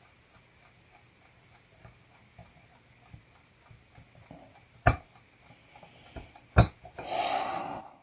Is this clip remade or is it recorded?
recorded